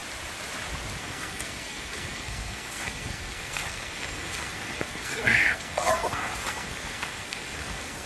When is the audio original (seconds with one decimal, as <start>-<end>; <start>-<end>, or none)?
0.0-1.0